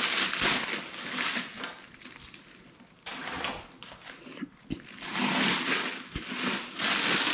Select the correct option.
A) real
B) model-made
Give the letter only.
A